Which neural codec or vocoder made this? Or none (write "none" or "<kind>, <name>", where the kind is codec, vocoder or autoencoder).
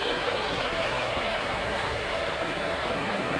codec, SNAC